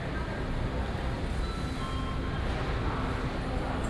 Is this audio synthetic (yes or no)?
no